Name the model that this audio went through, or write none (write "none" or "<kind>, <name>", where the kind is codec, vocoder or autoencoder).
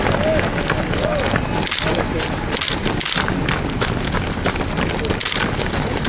none